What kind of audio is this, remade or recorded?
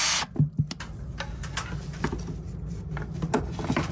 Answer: recorded